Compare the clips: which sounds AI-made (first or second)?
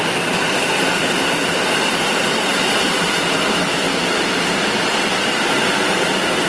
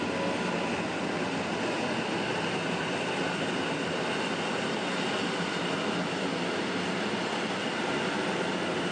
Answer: first